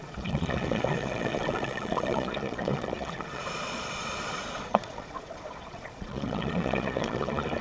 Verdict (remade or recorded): remade